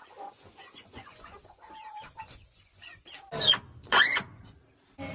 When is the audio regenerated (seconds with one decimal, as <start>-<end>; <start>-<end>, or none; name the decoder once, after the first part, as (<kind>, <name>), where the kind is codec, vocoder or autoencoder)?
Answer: 0.0-3.1 (vocoder, Vocos); 3.8-4.6